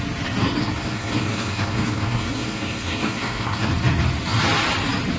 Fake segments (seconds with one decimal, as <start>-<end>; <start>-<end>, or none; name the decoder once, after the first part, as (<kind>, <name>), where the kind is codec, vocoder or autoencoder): 0.6-3.7 (codec, SNAC)